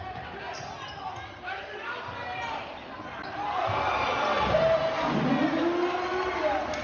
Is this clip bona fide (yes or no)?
yes